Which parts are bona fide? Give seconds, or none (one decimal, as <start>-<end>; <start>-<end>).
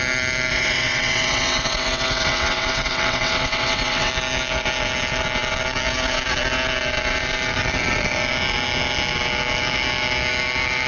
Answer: 0.0-0.5; 4.1-10.9